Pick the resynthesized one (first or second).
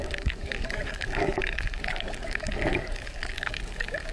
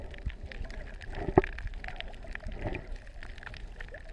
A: first